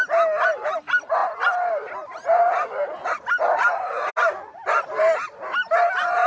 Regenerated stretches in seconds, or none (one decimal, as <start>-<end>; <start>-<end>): none